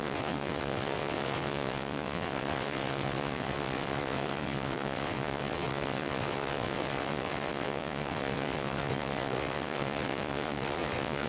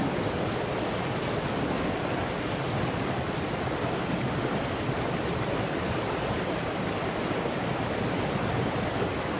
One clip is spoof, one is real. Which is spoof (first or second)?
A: first